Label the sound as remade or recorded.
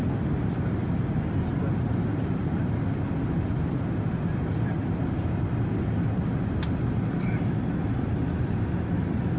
recorded